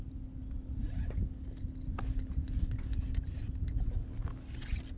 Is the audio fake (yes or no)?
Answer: no